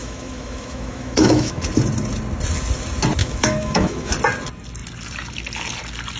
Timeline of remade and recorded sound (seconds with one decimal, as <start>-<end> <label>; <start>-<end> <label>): 0.0-1.6 remade; 1.6-3.2 recorded; 3.2-4.1 remade; 4.1-6.2 recorded